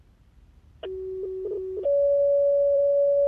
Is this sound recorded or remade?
recorded